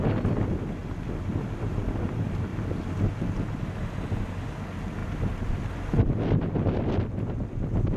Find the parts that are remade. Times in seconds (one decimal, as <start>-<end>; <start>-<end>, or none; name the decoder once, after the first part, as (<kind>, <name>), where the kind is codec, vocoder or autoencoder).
0.8-1.3 (vocoder, BigVGAN v2); 5.0-5.7